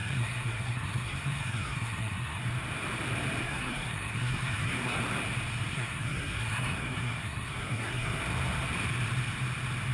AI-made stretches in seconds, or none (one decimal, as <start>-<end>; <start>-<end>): 0.0-2.4; 3.4-5.0; 5.7-8.2